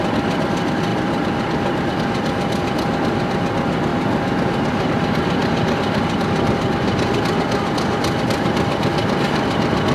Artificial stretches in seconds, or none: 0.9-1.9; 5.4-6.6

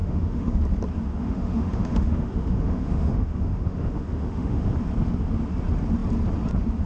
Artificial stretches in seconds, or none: 0.0-0.6; 1.1-4.7